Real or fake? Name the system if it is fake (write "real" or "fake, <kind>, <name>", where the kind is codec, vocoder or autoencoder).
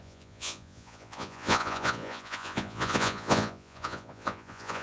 fake, vocoder, Vocos